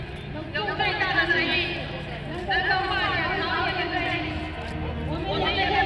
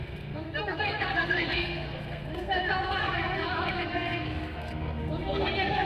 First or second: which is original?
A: first